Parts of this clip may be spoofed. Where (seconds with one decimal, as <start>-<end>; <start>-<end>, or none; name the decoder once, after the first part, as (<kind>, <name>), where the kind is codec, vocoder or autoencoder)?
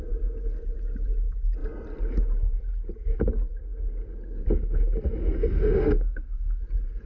5.2-6.6 (autoencoder, DAC-VAE)